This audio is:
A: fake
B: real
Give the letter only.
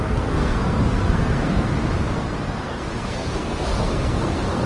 A